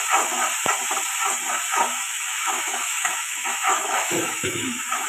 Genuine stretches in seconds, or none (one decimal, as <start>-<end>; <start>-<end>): 0.0-1.9